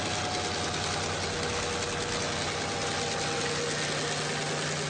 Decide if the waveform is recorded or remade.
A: recorded